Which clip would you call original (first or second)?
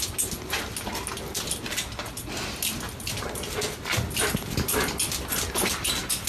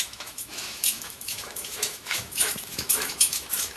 first